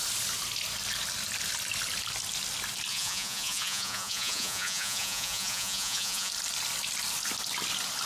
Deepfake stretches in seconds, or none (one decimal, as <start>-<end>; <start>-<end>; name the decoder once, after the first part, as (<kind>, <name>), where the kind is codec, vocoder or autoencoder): 2.9-6.3 (vocoder, Vocos)